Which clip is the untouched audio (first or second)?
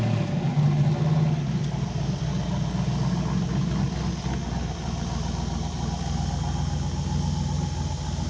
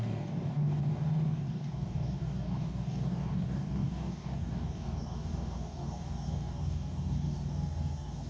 first